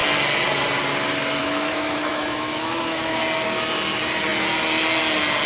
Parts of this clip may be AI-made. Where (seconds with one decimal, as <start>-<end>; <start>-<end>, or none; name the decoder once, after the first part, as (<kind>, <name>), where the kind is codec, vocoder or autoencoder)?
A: 1.4-3.2 (autoencoder, DAC-VAE)